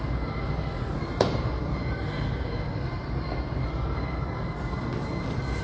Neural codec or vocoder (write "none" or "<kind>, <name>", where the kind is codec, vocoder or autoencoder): none